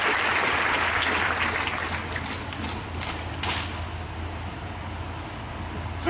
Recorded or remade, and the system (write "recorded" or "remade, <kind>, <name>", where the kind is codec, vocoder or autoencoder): recorded